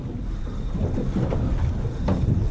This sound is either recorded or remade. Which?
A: recorded